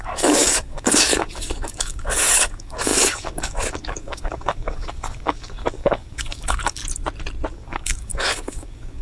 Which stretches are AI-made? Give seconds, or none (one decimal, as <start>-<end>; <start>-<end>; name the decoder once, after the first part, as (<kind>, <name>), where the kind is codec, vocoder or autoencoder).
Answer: 0.0-6.8 (codec, DAC); 7.5-9.0